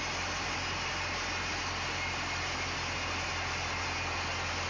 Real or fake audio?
real